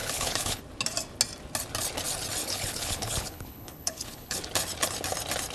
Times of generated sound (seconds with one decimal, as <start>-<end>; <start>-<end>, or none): 0.0-0.6; 2.4-4.4